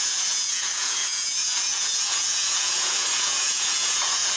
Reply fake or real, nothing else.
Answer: fake